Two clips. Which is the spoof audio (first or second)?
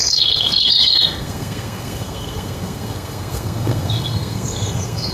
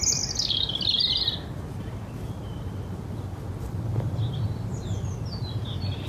first